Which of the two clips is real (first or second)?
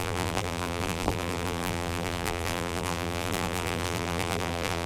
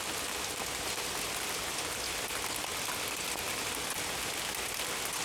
second